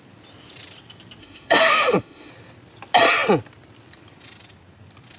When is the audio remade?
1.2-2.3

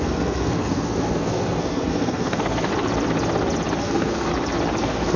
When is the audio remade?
0.0-2.7; 3.8-4.3; 4.8-5.2

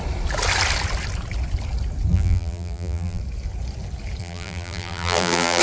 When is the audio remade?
2.1-3.2; 4.2-5.6

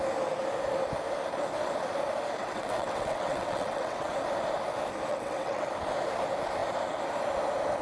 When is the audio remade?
2.4-4.1; 5.1-5.7

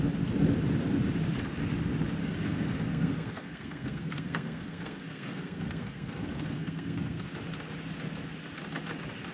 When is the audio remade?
2.2-7.3